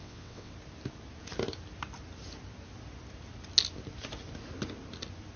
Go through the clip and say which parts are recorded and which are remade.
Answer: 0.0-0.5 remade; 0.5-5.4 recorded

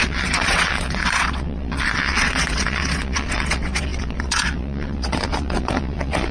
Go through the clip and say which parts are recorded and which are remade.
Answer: 0.0-6.3 remade

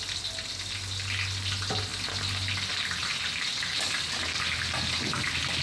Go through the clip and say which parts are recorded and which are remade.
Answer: 0.0-5.6 recorded

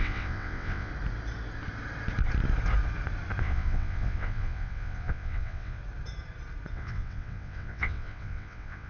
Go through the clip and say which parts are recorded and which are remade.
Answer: 0.0-0.9 remade; 0.9-3.4 recorded; 3.4-5.8 remade; 5.8-6.7 recorded; 6.7-8.9 remade

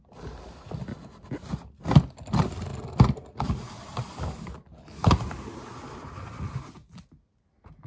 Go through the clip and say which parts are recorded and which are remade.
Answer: 0.0-7.9 recorded